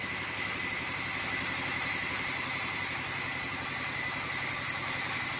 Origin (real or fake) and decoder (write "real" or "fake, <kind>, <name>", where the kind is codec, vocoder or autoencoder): real